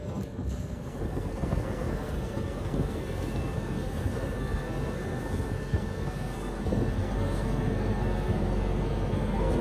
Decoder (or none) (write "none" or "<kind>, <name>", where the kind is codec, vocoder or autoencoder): codec, SNAC